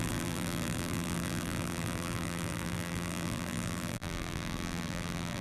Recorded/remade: remade